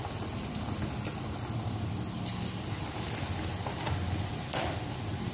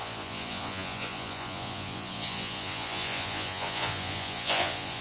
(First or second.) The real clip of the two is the first